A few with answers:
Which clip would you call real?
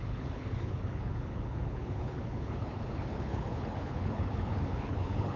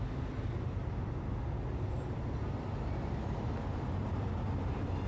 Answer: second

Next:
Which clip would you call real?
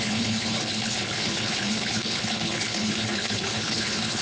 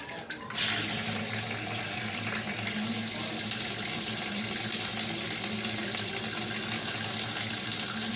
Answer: second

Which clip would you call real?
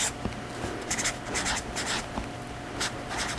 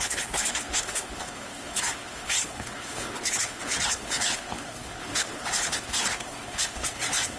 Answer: first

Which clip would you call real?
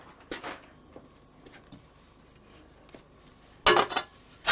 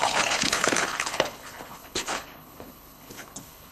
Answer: first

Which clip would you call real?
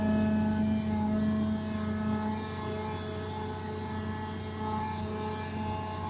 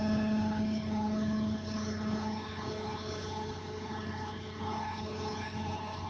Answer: first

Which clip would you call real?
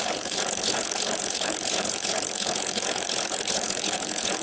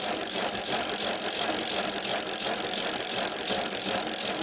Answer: second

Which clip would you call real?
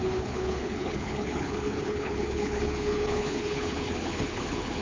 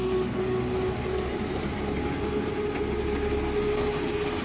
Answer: second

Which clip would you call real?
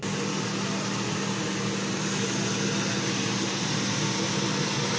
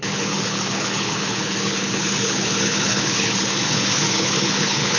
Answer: first